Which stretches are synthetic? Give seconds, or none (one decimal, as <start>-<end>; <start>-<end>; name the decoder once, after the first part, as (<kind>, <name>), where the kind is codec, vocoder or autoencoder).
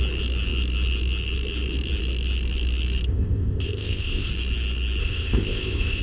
3.1-4.3 (codec, ZipCodec); 5.0-6.0